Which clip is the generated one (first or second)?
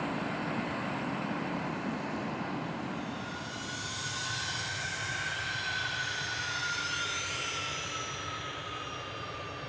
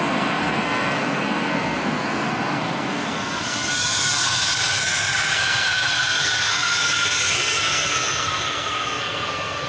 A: second